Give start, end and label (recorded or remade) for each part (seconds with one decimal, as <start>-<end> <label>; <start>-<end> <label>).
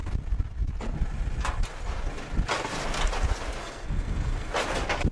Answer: 0.0-3.6 recorded; 3.6-4.5 remade; 4.5-5.1 recorded